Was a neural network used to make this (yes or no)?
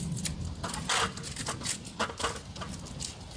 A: no